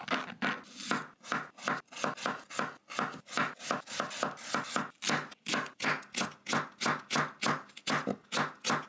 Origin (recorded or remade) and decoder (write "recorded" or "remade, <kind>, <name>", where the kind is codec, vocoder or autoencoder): recorded